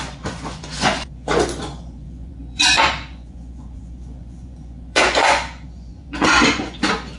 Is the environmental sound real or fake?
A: fake